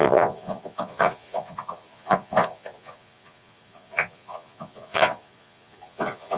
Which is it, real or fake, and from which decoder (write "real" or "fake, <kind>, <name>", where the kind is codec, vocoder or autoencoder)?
fake, vocoder, Vocos